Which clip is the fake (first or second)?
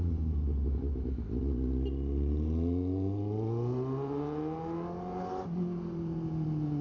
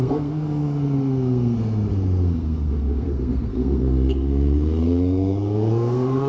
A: second